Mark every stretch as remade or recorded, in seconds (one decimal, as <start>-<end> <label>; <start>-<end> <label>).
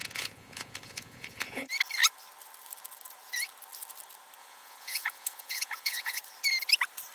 0.0-1.7 remade; 1.7-4.4 recorded; 4.4-6.2 remade; 6.2-7.1 recorded